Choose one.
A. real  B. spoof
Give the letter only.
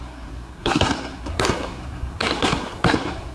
B